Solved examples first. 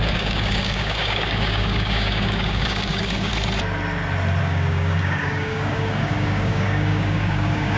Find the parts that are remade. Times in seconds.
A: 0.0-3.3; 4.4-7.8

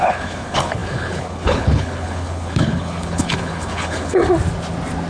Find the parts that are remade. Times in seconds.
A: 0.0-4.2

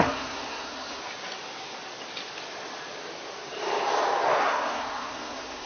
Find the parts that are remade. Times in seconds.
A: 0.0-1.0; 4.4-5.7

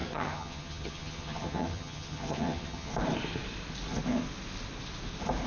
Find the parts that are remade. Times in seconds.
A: 0.0-2.9